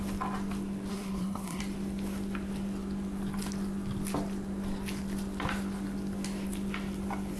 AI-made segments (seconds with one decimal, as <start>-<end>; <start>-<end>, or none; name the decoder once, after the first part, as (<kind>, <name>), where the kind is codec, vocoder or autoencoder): 0.9-1.6 (codec, SNAC)